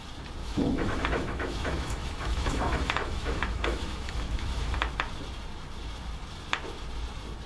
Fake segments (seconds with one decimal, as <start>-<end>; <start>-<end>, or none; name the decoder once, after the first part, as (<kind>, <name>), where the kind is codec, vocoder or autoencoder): 0.4-4.9 (autoencoder, DAC-VAE)